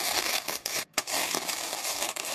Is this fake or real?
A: fake